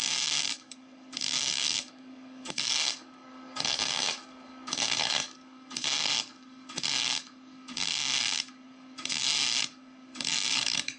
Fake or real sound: fake